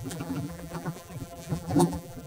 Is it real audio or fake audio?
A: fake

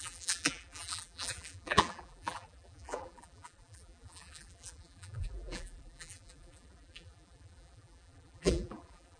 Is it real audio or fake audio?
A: fake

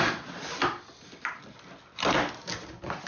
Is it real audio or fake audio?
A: real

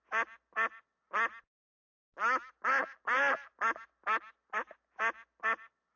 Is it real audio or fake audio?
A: real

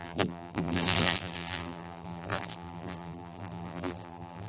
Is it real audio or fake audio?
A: fake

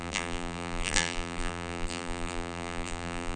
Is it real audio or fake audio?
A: fake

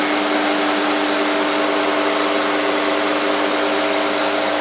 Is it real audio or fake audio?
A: real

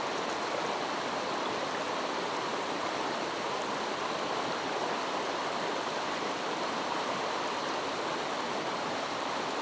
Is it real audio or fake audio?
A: fake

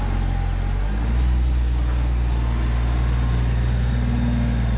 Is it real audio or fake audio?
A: real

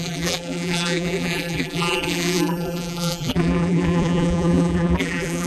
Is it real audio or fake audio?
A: fake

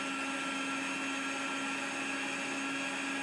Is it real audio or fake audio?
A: real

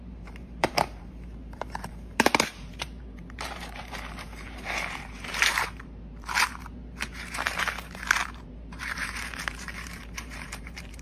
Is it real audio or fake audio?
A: fake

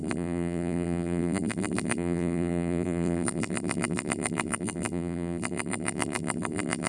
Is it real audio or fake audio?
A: fake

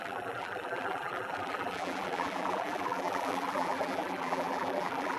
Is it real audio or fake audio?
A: fake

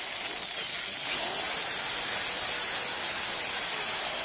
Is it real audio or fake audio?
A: real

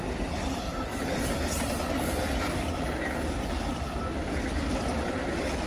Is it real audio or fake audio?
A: fake